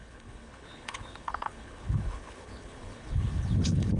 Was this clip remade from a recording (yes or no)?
yes